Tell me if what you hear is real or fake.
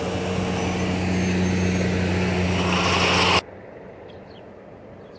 real